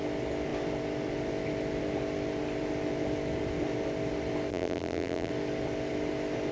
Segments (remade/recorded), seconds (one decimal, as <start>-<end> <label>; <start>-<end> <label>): 0.0-4.5 recorded; 4.5-5.3 remade; 5.3-6.5 recorded